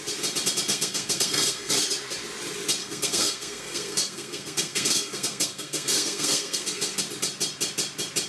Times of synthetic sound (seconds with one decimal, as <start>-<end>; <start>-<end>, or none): 0.7-1.7; 2.8-7.0